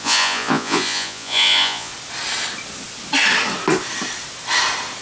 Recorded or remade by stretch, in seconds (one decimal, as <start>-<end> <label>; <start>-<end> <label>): 0.0-1.9 remade; 1.9-5.0 recorded